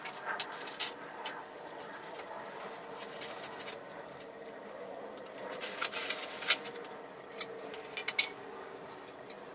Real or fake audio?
real